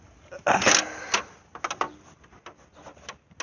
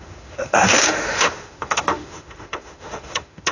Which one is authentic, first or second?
first